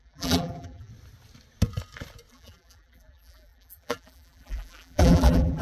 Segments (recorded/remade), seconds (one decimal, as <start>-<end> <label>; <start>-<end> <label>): 0.0-0.9 remade; 0.9-2.3 recorded; 2.3-5.6 remade